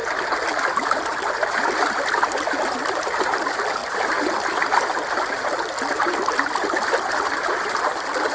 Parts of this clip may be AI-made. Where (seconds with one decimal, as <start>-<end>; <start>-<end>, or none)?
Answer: 1.0-8.3